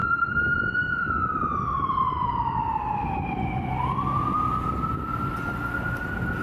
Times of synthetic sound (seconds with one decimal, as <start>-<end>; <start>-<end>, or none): 0.0-0.6; 1.2-5.0